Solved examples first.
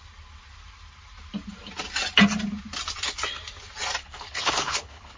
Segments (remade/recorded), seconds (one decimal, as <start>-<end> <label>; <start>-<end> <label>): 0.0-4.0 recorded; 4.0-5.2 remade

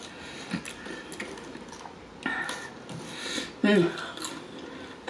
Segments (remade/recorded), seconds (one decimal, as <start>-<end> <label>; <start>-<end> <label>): 0.0-5.1 recorded

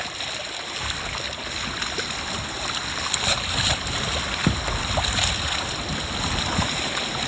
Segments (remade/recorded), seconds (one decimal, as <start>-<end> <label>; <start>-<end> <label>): 0.0-7.3 recorded

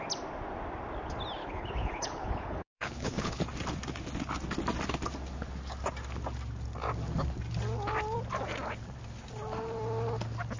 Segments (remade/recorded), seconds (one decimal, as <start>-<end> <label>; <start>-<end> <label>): 0.0-1.4 recorded; 1.4-3.4 remade; 3.4-10.6 recorded

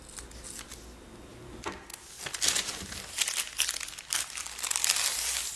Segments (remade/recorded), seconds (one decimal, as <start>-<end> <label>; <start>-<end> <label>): 0.0-5.6 recorded

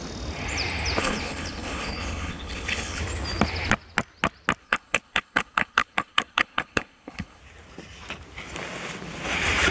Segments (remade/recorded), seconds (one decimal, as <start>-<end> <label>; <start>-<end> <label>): 0.0-1.0 recorded; 1.0-3.0 remade; 3.0-4.6 recorded; 4.6-7.4 remade; 7.4-9.7 recorded